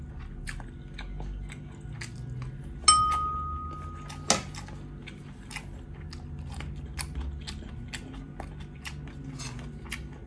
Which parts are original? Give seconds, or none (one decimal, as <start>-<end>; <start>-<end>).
0.0-5.0; 6.1-10.3